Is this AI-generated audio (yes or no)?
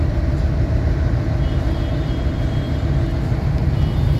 no